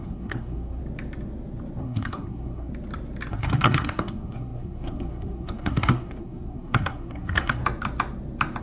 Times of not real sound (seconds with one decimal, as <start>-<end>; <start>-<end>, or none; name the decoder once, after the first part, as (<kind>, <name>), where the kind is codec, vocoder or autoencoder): 0.0-0.8 (codec, SNAC); 1.8-2.7; 3.3-7.6